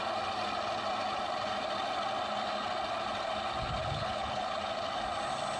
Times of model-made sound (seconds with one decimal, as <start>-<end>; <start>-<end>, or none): 3.8-4.4